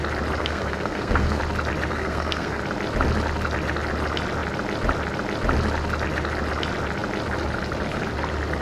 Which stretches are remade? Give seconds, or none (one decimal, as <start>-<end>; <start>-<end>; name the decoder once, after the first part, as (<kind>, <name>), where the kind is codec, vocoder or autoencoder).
0.4-1.4 (codec, SNAC); 1.9-2.6